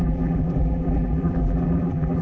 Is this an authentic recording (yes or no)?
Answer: no